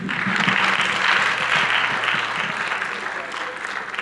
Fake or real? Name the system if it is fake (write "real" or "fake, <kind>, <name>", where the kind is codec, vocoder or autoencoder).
real